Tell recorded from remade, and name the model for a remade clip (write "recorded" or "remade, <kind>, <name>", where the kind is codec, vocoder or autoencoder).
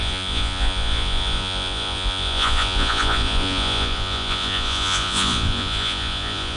remade, vocoder, Vocos